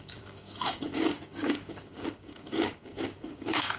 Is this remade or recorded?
remade